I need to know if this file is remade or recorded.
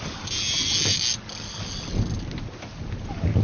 recorded